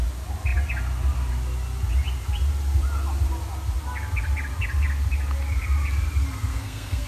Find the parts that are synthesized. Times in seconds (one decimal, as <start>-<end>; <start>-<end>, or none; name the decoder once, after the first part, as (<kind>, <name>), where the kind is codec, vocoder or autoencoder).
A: 6.5-7.1 (codec, SNAC)